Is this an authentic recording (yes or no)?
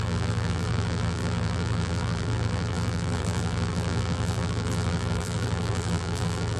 no